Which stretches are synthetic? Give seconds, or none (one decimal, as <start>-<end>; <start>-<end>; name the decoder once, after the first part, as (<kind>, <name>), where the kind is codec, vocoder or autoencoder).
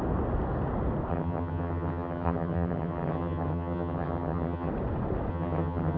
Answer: 1.1-4.7 (vocoder, HiFi-GAN); 5.3-6.0